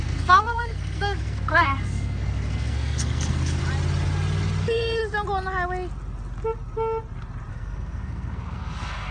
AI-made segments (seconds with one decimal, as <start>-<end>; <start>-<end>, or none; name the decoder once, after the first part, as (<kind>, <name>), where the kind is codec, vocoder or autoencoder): 0.0-3.6 (codec, SNAC); 4.6-5.0; 7.5-9.1